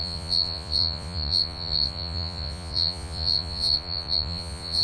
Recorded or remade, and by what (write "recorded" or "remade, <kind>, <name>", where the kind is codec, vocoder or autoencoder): remade, vocoder, Vocos